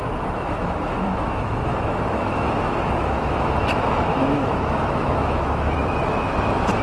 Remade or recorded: remade